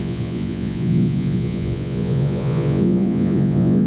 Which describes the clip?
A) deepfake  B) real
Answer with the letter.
A